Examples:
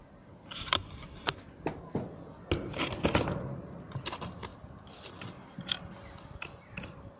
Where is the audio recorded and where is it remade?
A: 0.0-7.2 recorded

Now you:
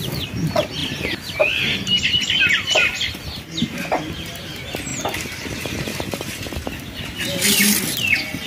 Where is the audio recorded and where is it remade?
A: 0.0-0.8 recorded; 0.8-2.5 remade; 2.5-8.5 recorded

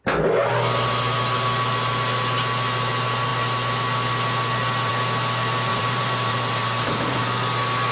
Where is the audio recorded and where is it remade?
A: 0.0-5.7 recorded; 5.7-7.2 remade; 7.2-7.9 recorded

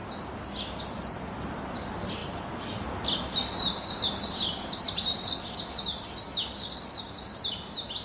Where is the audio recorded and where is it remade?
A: 0.0-8.0 recorded

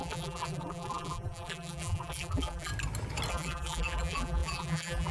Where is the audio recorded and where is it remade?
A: 0.0-2.7 remade; 2.7-3.3 recorded; 3.3-5.1 remade

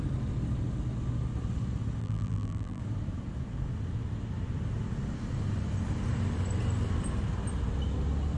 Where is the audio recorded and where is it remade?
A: 0.0-2.0 recorded; 2.0-2.8 remade; 2.8-8.4 recorded

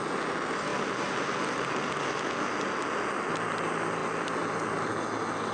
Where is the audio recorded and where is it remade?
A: 0.0-0.7 recorded; 0.7-2.1 remade; 2.1-4.0 recorded; 4.0-4.9 remade; 4.9-5.5 recorded

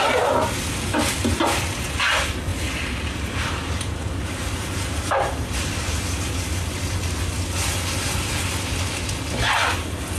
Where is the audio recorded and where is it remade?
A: 0.0-2.5 recorded; 2.5-6.0 remade; 6.0-10.2 recorded